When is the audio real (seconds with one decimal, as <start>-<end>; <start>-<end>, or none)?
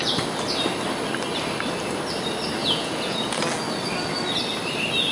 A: 0.0-2.6; 3.4-5.1